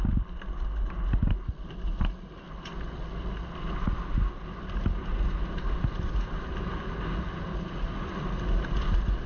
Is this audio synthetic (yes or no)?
no